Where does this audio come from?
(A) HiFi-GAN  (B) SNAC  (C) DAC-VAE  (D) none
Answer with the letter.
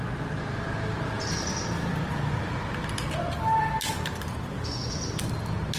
D